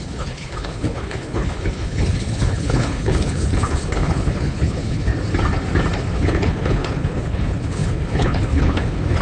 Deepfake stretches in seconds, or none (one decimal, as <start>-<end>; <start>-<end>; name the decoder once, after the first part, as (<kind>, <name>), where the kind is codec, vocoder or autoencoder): 0.0-5.1 (codec, HILCodec); 6.1-9.2